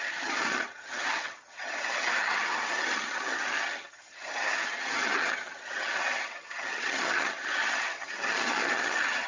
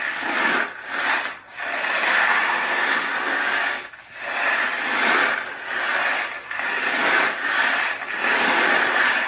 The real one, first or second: second